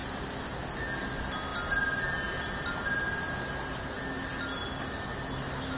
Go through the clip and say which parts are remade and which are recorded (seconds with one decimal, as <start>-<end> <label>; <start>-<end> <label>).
0.0-5.8 recorded